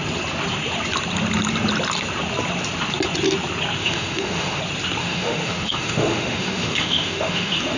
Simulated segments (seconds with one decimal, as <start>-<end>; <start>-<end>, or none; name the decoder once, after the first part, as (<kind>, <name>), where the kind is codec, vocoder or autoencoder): 3.8-4.6 (autoencoder, DAC-VAE); 5.0-7.8